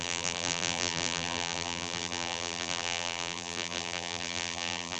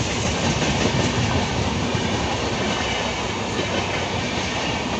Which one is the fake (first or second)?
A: first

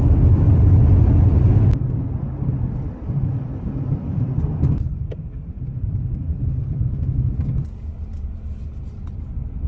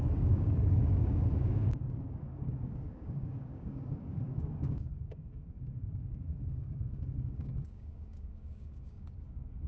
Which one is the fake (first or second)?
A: second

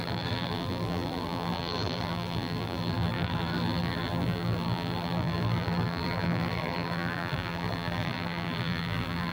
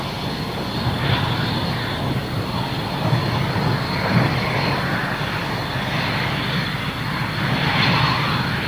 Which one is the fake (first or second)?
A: first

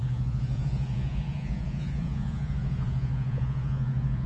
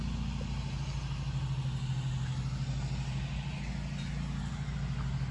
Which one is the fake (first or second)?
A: first